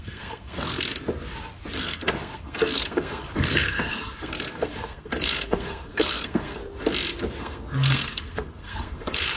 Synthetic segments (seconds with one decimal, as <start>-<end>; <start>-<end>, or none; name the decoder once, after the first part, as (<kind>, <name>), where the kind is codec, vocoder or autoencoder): 0.0-0.9 (codec, SNAC); 1.8-6.6; 7.4-9.4